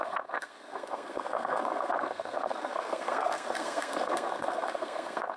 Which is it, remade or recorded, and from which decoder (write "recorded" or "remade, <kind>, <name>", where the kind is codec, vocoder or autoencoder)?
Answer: remade, codec, SNAC